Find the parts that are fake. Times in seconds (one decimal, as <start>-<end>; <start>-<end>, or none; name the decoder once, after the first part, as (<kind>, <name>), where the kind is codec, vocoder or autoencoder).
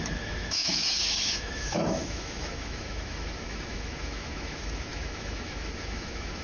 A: 0.0-6.4 (autoencoder, DAC-VAE)